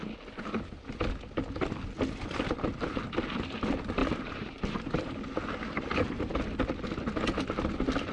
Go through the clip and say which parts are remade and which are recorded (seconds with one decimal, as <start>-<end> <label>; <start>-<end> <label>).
0.0-4.0 recorded; 4.0-5.1 remade; 5.1-8.1 recorded